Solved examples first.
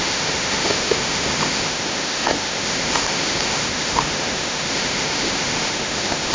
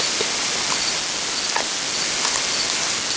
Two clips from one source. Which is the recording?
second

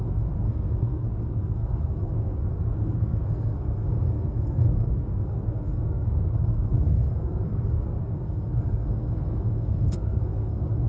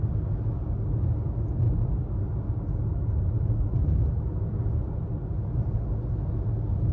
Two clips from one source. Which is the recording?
second